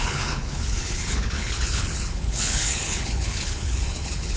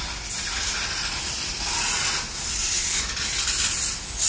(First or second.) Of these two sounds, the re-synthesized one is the first